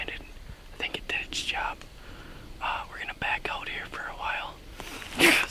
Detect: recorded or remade recorded